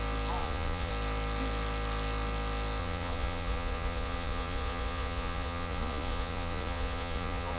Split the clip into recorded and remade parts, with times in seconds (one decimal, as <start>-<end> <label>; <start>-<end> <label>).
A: 0.0-0.4 recorded; 0.4-0.9 remade; 0.9-2.8 recorded; 2.8-7.6 remade